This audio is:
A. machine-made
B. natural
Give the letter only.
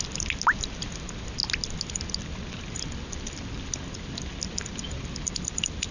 B